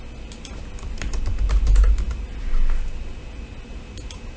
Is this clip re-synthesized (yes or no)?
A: no